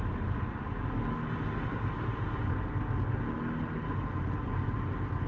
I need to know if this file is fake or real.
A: real